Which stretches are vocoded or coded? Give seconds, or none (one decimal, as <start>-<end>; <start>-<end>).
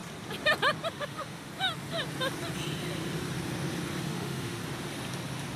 0.9-1.5; 4.0-4.6